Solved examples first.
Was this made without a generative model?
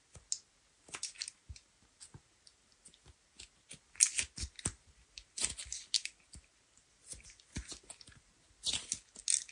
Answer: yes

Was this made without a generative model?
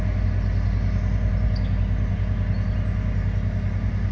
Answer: yes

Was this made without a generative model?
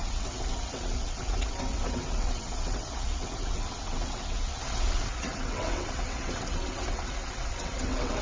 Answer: no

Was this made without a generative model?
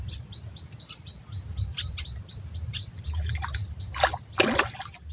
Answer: yes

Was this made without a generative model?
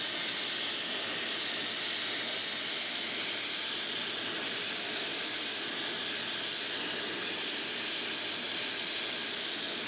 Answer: yes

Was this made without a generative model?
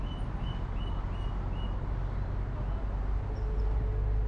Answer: yes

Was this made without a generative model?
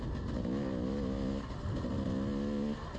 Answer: yes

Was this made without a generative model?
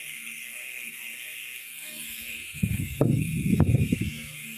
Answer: no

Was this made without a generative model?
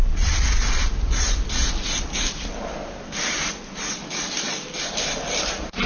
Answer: no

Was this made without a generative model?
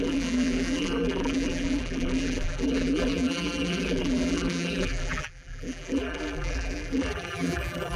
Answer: no